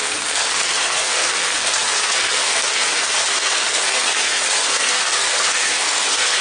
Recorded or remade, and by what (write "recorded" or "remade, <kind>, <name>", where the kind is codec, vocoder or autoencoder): remade, codec, SNAC